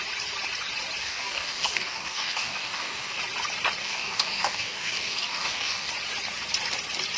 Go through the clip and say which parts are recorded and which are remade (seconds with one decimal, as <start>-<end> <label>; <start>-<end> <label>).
0.0-1.0 recorded; 1.0-3.2 remade; 3.2-3.8 recorded; 3.8-5.9 remade; 5.9-7.2 recorded

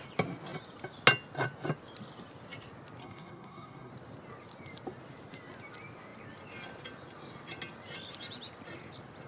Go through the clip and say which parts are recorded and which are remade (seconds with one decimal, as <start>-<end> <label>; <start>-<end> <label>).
0.0-3.0 recorded; 3.0-3.9 remade; 3.9-9.3 recorded

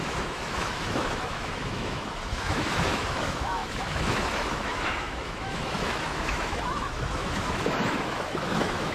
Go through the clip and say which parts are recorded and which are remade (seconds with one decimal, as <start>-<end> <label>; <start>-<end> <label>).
0.0-8.9 remade

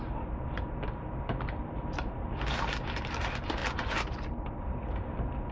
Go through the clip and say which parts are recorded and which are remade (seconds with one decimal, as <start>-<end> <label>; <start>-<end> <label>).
0.0-5.5 recorded

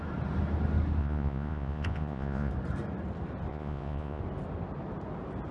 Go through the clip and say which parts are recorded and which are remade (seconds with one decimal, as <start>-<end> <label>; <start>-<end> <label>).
0.0-1.0 recorded; 1.0-2.5 remade; 2.5-3.5 recorded; 3.5-4.2 remade; 4.2-5.5 recorded

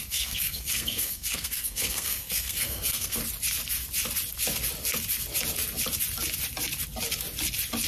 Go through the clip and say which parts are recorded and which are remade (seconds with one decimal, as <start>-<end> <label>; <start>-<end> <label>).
0.0-3.2 remade; 3.2-7.9 recorded

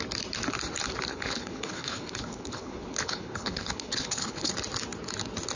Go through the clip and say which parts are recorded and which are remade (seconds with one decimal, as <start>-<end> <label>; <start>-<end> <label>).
0.0-1.1 recorded; 1.1-4.5 remade; 4.5-5.6 recorded

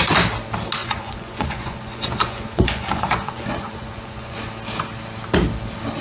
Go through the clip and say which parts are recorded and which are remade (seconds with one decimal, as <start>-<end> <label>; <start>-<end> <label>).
0.0-0.8 recorded; 0.8-4.4 remade; 4.4-6.0 recorded